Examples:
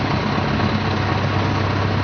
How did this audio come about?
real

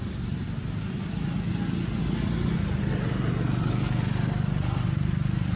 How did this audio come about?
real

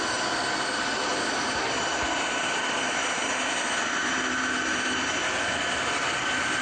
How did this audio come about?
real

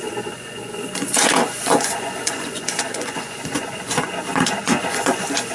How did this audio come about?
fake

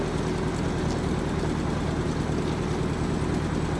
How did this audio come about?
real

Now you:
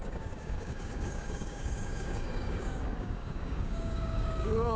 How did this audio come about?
fake